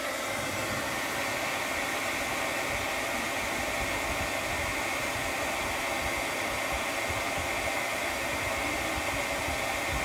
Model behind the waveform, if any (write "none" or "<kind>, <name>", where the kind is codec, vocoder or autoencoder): none